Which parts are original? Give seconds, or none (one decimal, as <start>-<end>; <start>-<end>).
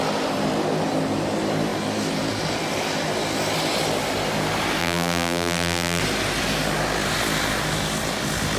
0.0-4.8; 6.0-8.6